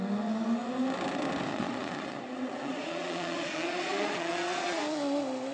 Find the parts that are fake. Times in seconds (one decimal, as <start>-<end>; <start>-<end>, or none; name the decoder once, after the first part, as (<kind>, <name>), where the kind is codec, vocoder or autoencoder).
1.5-4.8 (vocoder, Vocos)